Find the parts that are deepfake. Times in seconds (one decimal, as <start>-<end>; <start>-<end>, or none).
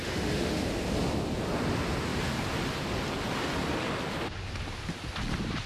0.0-0.6